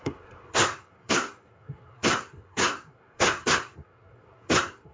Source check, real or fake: fake